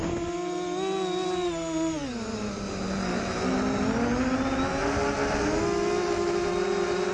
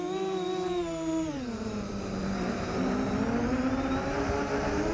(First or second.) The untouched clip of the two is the first